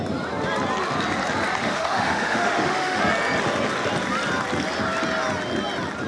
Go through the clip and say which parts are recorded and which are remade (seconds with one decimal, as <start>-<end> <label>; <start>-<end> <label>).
0.0-1.6 recorded; 1.6-3.0 remade; 3.0-6.1 recorded